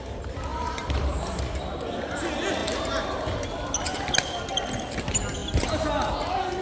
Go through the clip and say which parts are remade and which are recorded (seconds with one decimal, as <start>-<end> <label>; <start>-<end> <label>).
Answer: 0.0-6.6 recorded